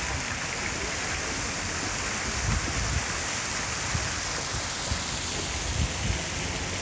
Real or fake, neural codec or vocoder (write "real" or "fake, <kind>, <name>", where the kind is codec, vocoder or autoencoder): real